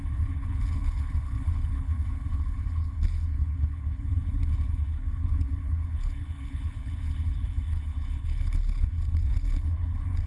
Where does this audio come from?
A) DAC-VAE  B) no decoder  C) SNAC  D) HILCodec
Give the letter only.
D